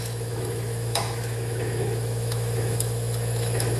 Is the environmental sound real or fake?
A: fake